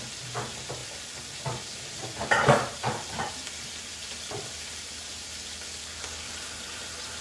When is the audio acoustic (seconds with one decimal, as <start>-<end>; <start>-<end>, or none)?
0.0-5.8; 6.3-7.2